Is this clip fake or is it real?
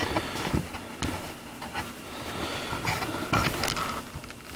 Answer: real